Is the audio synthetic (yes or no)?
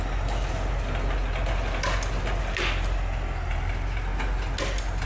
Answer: no